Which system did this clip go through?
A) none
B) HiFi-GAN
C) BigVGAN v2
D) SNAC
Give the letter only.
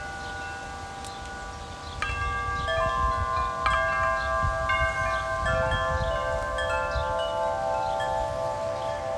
A